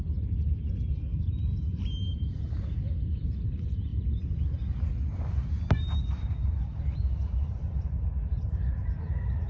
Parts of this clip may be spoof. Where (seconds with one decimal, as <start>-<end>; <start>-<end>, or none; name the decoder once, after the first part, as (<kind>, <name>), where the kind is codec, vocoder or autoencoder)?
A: 1.1-2.4 (vocoder, BigVGAN v2); 7.2-9.5